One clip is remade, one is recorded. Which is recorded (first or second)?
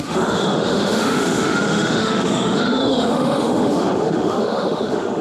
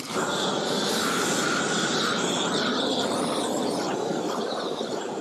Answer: second